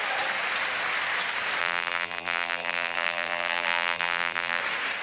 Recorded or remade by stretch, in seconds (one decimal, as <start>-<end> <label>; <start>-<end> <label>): 0.0-1.6 recorded; 1.6-4.6 remade; 4.6-5.0 recorded